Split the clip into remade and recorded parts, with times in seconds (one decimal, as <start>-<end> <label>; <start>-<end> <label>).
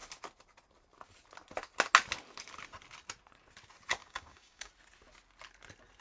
0.0-4.0 recorded; 4.0-4.7 remade; 4.7-6.0 recorded